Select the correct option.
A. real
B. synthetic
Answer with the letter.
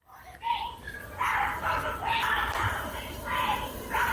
B